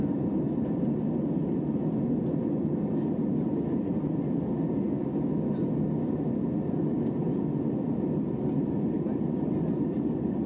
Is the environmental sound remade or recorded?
recorded